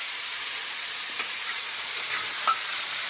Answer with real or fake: fake